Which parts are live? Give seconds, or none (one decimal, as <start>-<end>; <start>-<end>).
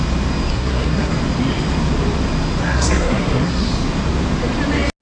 0.0-0.5; 1.1-2.6; 3.7-5.0